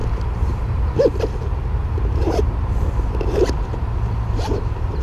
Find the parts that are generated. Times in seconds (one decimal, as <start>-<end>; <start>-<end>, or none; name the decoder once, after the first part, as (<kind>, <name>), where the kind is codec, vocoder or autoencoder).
0.0-1.0 (vocoder, BigVGAN v2); 1.8-5.0